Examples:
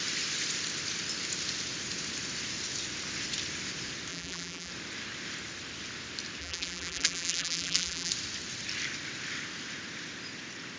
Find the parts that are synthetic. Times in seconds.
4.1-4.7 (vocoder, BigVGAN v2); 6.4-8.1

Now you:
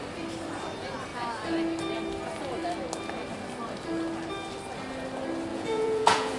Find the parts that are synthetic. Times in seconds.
5.5-6.4 (vocoder, Vocos)